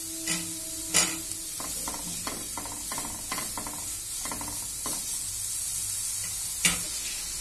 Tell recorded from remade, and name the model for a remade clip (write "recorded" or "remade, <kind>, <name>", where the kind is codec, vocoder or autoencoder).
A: recorded